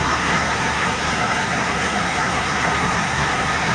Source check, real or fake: fake